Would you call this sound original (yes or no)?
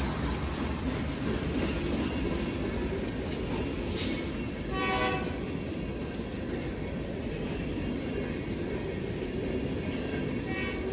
yes